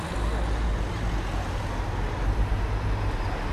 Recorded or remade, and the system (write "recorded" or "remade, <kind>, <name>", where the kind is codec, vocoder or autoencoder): recorded